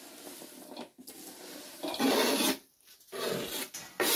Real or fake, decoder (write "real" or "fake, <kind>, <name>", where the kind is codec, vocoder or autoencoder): real